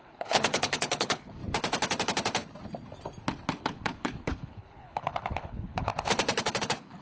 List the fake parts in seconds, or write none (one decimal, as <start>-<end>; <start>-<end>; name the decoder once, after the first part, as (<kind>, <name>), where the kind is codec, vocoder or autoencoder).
0.0-1.4 (codec, HILCodec); 3.6-5.9; 6.6-7.0